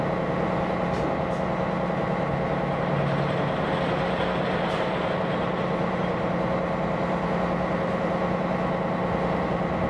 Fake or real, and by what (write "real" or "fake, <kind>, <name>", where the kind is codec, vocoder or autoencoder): real